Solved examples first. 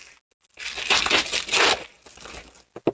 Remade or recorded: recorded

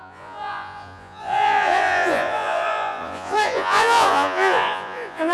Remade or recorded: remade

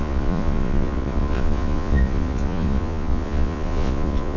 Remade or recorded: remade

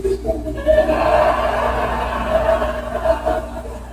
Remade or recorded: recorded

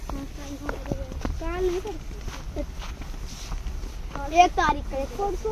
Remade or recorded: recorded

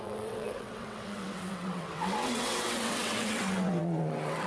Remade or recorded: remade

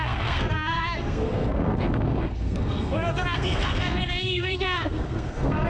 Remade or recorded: remade